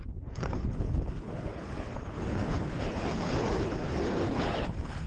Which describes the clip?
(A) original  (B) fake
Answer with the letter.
B